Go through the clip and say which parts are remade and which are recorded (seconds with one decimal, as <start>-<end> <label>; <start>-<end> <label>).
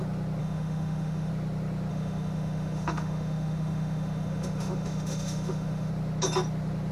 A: 0.0-0.4 recorded; 0.4-1.3 remade; 1.3-1.9 recorded; 1.9-5.9 remade; 5.9-6.9 recorded